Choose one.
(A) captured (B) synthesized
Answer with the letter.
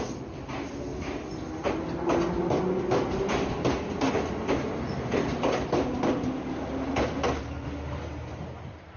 A